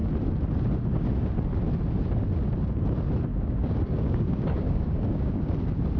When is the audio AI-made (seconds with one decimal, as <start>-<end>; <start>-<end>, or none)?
3.3-5.5